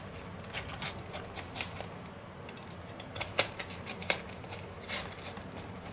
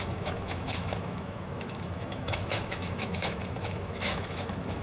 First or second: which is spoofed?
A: second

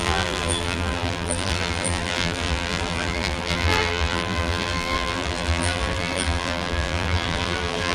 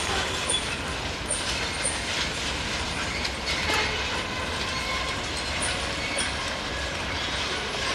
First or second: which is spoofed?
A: first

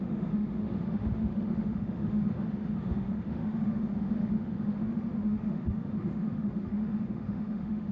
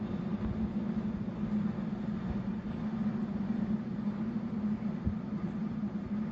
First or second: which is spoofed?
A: first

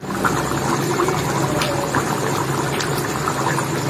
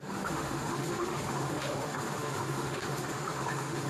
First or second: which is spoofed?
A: second